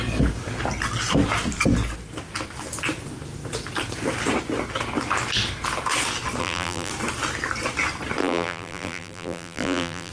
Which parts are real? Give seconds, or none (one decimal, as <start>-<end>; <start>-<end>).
0.0-6.4; 6.9-8.2